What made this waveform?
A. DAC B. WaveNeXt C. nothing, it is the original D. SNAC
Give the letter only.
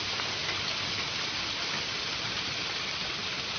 C